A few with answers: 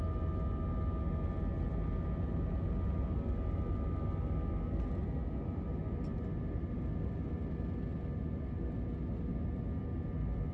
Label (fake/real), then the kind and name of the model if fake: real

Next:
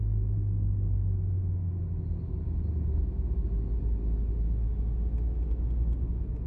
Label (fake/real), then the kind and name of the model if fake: real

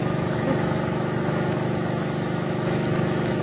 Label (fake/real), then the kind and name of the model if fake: fake, autoencoder, DAC-VAE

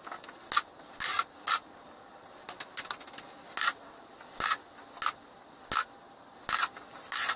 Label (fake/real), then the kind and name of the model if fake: real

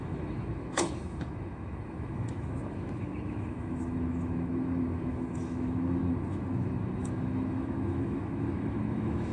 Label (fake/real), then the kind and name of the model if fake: fake, autoencoder, DAC-VAE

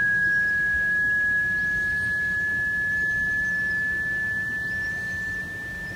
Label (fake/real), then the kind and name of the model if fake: real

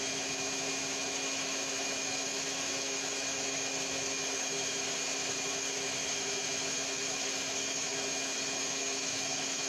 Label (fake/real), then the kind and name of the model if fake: fake, autoencoder, DAC-VAE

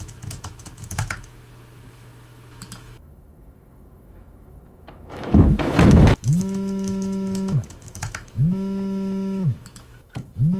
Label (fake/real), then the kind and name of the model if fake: fake, autoencoder, DAC-VAE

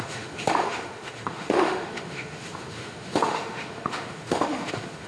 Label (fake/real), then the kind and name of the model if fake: fake, autoencoder, DAC-VAE